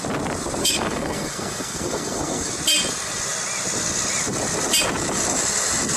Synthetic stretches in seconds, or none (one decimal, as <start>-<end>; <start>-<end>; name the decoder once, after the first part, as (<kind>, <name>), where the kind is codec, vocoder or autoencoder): 0.6-2.5 (codec, SNAC)